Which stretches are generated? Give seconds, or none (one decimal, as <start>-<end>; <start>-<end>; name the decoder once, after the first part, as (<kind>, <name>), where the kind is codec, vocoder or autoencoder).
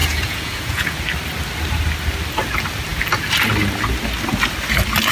0.0-1.0 (vocoder, Vocos)